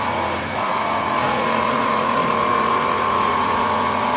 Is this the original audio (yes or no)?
no